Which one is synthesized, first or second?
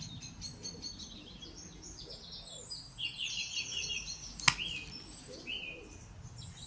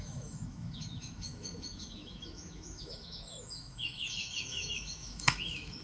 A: second